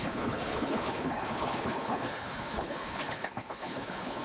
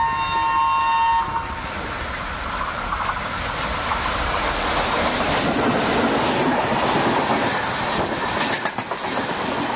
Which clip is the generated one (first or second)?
first